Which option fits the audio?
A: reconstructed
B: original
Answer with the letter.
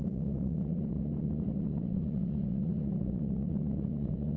A